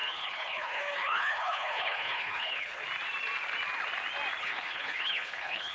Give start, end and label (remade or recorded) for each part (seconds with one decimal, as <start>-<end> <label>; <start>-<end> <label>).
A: 0.0-2.8 remade; 2.8-4.4 recorded; 4.4-5.7 remade